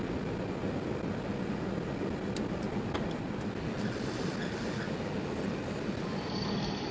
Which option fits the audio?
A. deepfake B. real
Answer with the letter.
B